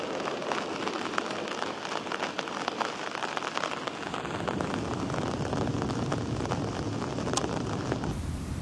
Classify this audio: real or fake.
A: real